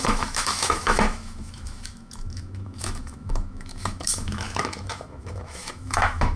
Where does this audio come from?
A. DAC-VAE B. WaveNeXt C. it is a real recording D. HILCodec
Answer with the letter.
A